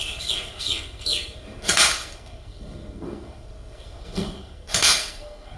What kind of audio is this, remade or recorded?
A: remade